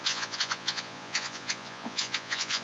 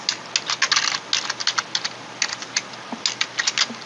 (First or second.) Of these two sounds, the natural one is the second